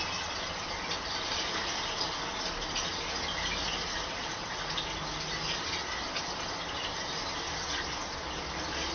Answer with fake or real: real